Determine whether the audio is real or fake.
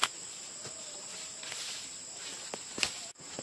real